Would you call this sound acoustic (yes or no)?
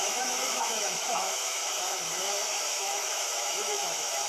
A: no